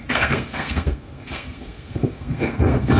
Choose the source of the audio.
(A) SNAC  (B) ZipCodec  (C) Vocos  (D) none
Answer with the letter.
A